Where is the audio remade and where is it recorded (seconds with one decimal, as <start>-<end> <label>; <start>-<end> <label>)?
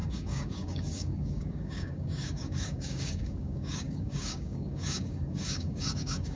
0.0-6.3 remade